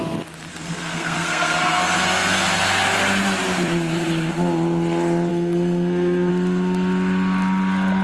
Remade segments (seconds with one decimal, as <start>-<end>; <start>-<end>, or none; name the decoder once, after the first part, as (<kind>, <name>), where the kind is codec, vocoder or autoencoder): 0.5-1.8 (codec, SNAC); 5.3-6.3